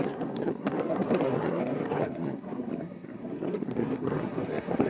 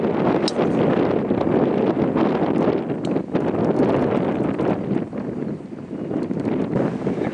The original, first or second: second